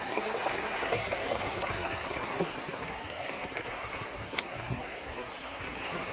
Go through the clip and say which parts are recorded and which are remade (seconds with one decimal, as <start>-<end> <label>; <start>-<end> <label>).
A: 0.0-6.1 remade